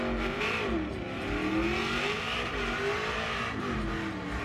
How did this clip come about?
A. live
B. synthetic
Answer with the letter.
A